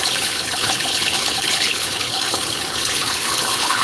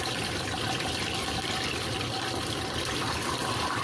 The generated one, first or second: first